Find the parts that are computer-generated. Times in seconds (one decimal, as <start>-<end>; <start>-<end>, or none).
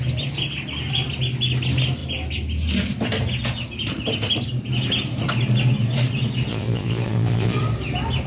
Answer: 6.5-7.6